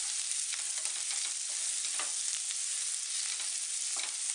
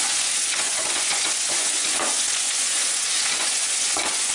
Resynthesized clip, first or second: second